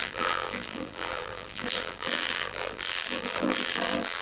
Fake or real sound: fake